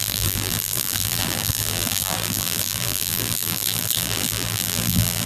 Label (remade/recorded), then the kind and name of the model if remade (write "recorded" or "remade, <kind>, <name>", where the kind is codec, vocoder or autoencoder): remade, vocoder, BigVGAN v2